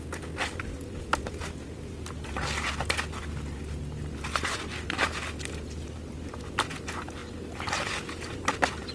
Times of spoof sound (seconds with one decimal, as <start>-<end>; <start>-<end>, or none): none